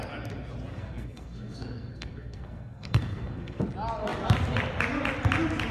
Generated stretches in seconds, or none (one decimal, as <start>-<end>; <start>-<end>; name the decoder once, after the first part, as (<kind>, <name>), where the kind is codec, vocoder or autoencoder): 0.7-3.6 (codec, SNAC)